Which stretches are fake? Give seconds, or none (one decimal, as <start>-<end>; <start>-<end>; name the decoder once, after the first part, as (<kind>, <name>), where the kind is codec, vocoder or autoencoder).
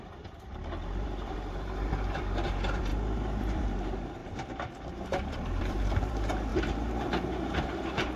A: 0.0-2.9 (vocoder, BigVGAN v2); 3.4-8.2